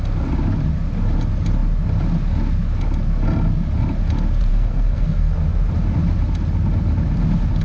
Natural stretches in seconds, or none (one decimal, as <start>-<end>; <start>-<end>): 0.0-4.5; 5.3-7.6